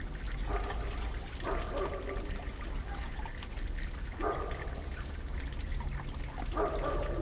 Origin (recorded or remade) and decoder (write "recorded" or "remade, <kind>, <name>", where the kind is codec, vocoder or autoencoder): recorded